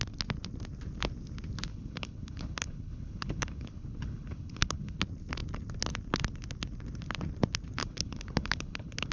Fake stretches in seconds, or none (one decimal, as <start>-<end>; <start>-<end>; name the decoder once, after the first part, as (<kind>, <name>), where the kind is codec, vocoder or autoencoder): 1.7-5.0 (codec, HILCodec); 7.8-9.1

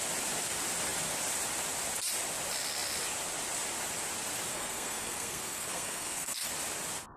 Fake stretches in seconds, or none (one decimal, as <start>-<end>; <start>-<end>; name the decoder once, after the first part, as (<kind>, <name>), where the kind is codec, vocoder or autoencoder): 4.5-6.5 (codec, SNAC)

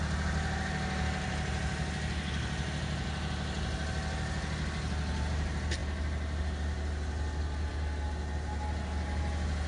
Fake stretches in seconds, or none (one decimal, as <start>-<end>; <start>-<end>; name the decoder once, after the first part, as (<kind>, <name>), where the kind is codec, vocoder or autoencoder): none

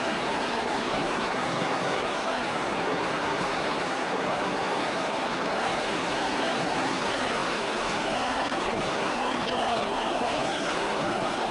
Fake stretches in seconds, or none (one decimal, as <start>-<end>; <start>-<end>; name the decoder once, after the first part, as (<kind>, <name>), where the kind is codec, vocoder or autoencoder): 0.0-11.5 (codec, SNAC)

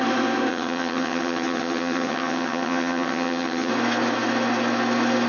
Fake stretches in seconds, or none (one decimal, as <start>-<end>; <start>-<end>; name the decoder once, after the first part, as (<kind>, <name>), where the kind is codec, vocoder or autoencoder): 0.5-3.7 (vocoder, HiFi-GAN)

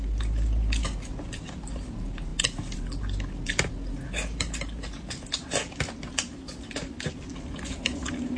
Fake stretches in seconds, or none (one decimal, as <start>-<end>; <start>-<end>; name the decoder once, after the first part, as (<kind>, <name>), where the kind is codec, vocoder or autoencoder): none